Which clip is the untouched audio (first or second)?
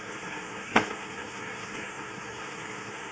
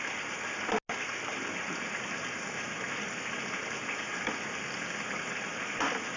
second